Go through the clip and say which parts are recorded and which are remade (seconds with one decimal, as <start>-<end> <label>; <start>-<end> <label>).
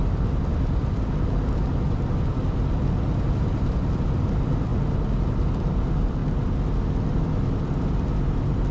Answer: 0.0-4.7 remade; 4.7-5.2 recorded; 5.2-6.2 remade; 6.2-7.2 recorded; 7.2-8.7 remade